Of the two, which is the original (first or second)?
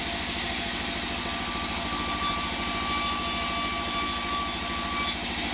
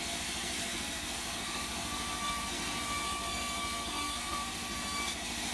first